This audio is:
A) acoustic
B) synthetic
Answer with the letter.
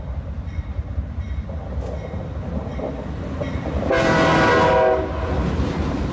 A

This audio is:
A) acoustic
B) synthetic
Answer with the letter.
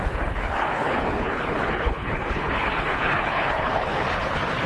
B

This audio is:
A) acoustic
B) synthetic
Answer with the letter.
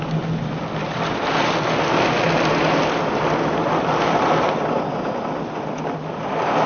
A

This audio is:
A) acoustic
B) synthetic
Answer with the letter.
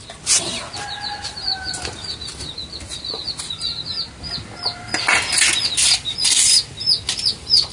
A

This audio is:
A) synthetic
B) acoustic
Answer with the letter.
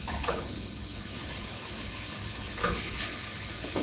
A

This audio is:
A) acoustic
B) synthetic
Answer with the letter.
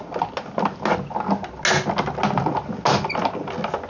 A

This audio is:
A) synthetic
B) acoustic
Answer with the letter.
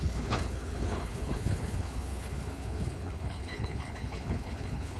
A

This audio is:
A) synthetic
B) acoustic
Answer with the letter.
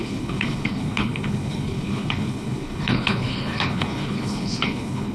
A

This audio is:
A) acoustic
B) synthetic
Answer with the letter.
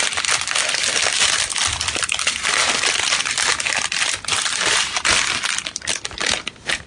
A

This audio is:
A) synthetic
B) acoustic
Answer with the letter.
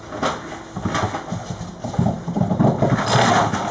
B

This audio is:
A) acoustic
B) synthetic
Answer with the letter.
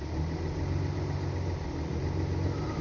A